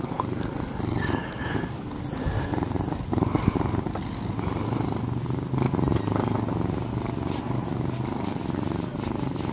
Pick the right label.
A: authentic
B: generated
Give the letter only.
A